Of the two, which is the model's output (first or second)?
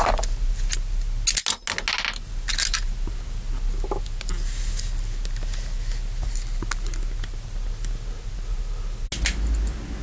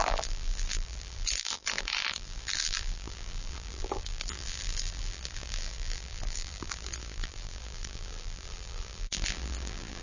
second